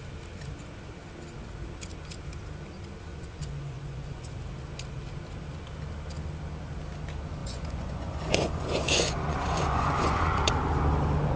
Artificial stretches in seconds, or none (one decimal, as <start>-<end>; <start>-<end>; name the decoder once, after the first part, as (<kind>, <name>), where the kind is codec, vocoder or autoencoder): 3.1-4.4 (vocoder, Vocos); 7.4-10.5